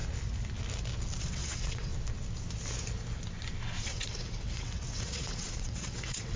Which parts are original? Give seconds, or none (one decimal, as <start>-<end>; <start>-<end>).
0.0-1.2; 1.9-3.8